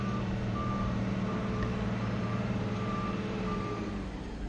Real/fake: fake